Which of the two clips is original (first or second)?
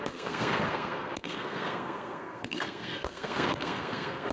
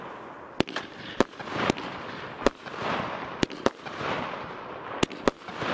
second